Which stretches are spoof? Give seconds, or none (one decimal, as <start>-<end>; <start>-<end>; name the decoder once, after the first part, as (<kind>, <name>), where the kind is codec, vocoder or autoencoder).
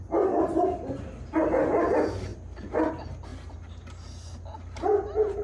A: none